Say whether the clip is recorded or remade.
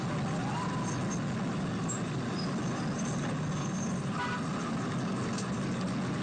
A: recorded